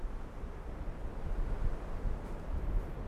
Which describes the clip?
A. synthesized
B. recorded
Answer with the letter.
B